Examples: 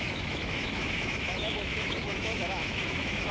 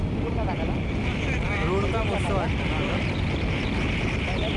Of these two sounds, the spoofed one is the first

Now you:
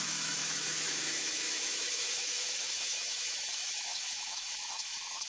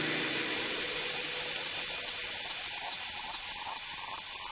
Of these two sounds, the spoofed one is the first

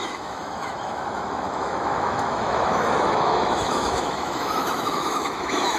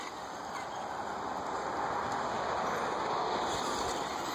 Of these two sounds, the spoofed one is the first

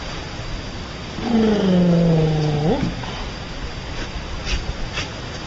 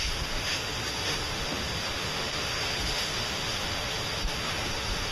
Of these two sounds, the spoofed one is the second